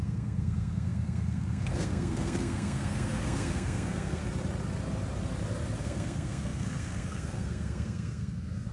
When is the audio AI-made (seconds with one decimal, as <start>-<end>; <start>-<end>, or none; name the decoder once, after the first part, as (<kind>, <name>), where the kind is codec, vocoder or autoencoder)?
0.0-4.2 (codec, SNAC); 5.8-8.7